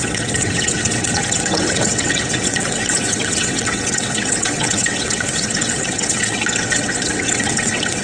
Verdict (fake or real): fake